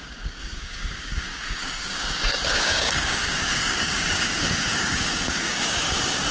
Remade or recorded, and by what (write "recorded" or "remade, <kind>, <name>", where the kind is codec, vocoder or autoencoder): remade, codec, DAC